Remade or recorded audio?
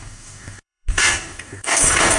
remade